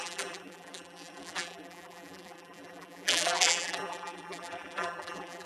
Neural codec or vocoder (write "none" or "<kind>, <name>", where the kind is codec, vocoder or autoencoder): vocoder, BigVGAN v2